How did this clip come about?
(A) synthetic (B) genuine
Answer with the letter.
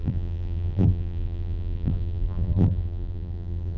A